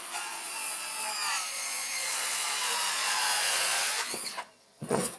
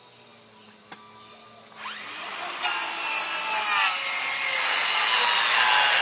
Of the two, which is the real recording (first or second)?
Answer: second